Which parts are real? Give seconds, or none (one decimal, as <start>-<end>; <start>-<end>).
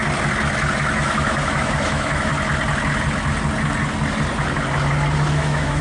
0.0-0.7; 2.3-5.3